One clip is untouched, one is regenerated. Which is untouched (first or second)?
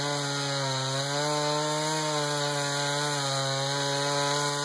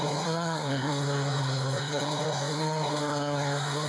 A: first